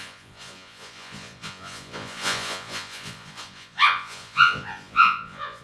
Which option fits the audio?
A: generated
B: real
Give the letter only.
A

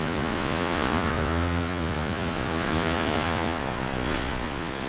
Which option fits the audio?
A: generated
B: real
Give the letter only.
A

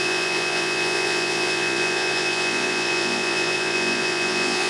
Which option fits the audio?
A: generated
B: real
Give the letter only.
A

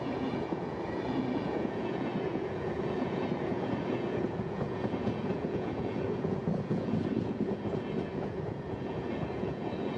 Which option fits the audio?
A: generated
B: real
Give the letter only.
A